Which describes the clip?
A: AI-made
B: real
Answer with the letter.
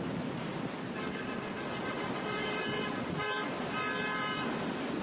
A